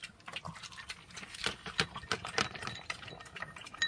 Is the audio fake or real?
real